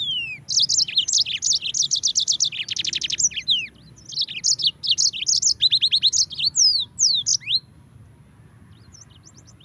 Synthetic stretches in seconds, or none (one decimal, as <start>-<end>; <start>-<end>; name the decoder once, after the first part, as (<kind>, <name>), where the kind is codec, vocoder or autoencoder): none